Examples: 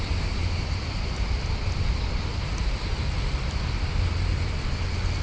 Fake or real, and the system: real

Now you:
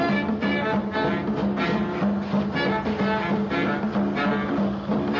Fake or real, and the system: real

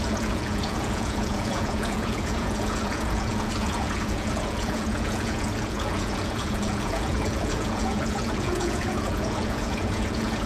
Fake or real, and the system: fake, vocoder, Vocos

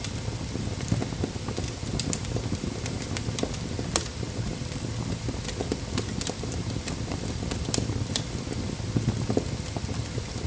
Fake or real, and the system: real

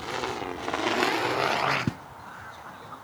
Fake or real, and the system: real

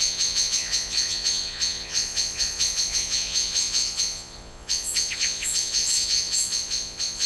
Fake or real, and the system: fake, vocoder, Vocos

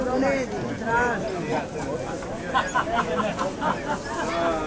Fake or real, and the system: real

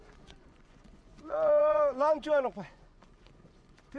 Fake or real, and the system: fake, vocoder, Vocos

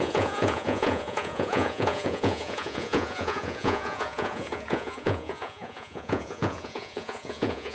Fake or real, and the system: fake, vocoder, Vocos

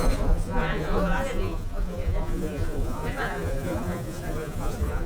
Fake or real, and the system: fake, vocoder, Vocos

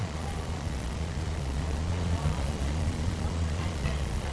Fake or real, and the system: fake, vocoder, Vocos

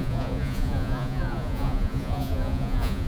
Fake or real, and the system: fake, vocoder, Vocos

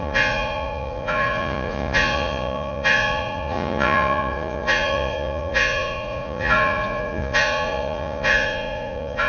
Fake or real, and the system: fake, vocoder, Vocos